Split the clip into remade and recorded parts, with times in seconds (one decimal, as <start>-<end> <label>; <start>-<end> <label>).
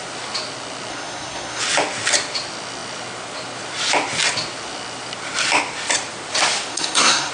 0.0-0.9 recorded; 0.9-1.6 remade; 1.6-6.7 recorded; 6.7-7.3 remade